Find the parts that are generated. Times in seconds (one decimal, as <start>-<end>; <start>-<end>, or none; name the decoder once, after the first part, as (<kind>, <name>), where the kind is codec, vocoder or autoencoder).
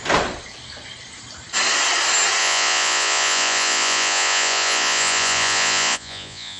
2.4-6.6 (vocoder, Vocos)